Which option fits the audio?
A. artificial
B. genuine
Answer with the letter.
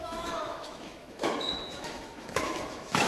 A